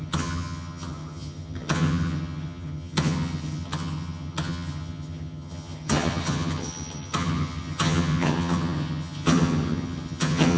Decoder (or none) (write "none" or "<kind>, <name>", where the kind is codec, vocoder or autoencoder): vocoder, HiFi-GAN